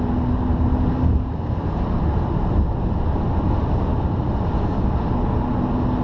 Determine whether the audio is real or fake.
real